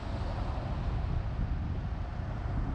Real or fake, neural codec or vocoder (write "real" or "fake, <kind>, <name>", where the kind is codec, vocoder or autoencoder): real